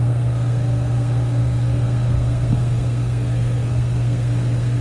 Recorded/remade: remade